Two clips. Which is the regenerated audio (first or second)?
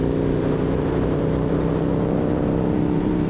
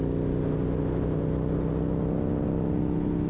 first